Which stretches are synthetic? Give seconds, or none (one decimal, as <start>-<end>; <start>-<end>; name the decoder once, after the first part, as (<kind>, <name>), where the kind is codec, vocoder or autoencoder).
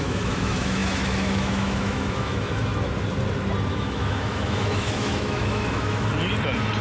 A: 0.0-2.7 (autoencoder, DAC-VAE); 3.7-6.1